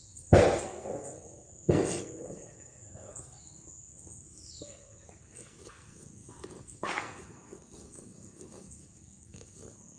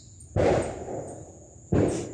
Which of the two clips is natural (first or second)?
second